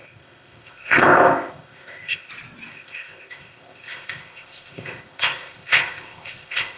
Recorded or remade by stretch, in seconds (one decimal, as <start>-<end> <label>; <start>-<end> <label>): 0.0-2.3 remade; 2.3-2.7 recorded; 2.7-6.8 remade

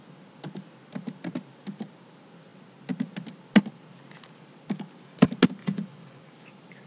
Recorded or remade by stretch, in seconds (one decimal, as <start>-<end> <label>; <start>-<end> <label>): 0.0-5.6 recorded; 5.6-6.2 remade; 6.2-6.9 recorded